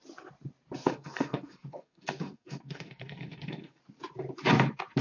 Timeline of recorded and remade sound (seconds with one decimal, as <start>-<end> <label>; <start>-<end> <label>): 0.0-0.8 recorded; 0.8-3.8 remade; 3.8-5.0 recorded